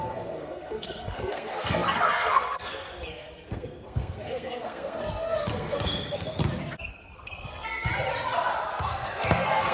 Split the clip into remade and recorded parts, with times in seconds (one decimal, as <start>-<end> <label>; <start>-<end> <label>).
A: 0.0-6.4 remade; 6.4-6.9 recorded; 6.9-7.9 remade; 7.9-8.7 recorded; 8.7-9.7 remade